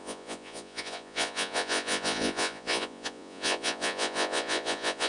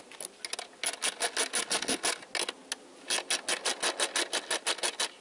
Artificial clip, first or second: first